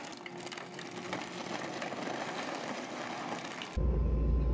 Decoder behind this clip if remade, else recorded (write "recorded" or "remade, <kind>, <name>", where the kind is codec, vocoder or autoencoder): recorded